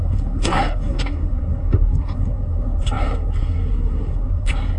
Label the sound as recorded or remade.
remade